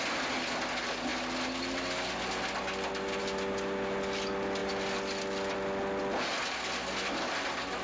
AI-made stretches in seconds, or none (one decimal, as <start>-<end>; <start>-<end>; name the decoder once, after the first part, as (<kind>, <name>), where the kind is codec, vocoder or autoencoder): none

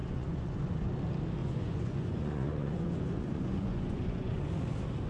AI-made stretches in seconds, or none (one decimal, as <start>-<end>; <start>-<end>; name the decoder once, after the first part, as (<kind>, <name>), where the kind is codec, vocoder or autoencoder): 0.0-0.9 (vocoder, Vocos); 1.4-4.5